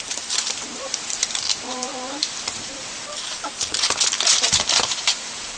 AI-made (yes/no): yes